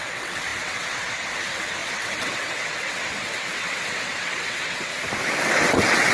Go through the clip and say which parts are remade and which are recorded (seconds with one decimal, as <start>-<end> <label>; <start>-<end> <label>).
0.0-4.9 remade; 4.9-5.4 recorded; 5.4-6.1 remade